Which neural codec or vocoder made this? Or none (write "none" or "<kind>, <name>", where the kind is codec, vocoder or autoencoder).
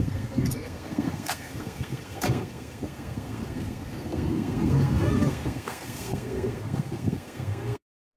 codec, SNAC